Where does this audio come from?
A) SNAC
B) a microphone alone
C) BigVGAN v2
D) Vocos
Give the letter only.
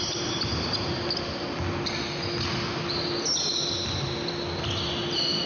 B